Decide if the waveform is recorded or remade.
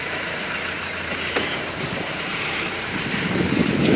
remade